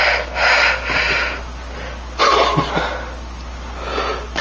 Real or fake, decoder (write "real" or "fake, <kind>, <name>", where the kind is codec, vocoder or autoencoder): real